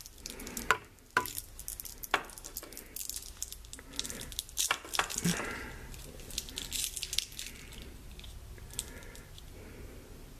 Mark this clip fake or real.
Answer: real